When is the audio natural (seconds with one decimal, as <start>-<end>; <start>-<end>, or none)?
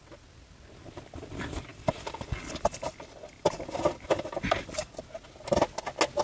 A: 0.0-1.7; 4.9-6.2